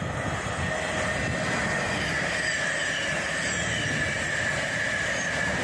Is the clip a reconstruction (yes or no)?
no